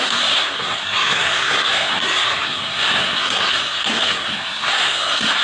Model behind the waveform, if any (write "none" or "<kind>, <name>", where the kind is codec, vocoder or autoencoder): codec, SNAC